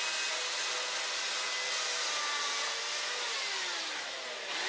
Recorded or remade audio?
recorded